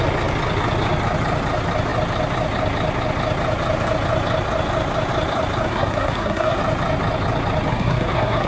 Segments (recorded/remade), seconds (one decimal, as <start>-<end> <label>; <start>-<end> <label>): 0.0-5.7 recorded; 5.7-6.6 remade; 6.6-7.7 recorded; 7.7-8.5 remade